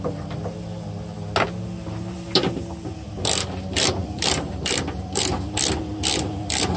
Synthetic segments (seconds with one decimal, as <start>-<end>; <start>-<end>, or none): 4.0-5.8